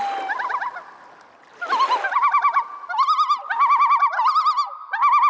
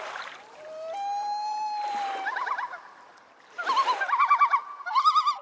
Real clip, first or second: first